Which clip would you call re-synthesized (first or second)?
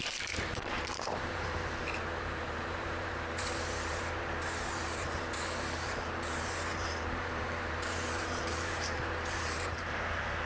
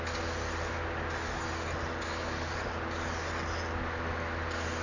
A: first